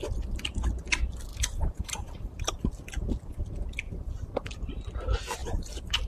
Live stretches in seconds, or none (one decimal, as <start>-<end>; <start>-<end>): 0.0-1.3; 2.5-6.1

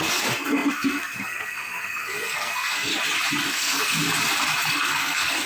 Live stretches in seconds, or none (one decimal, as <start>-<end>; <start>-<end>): 2.9-3.5; 4.0-4.7